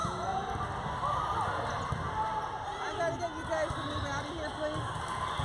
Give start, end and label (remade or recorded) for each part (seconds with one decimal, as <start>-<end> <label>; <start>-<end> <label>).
0.0-5.4 recorded